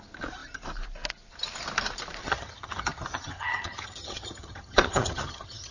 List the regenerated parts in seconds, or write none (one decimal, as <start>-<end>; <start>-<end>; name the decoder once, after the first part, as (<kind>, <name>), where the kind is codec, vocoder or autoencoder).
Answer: 2.2-5.7 (vocoder, HiFi-GAN)